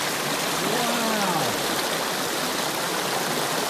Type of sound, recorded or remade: recorded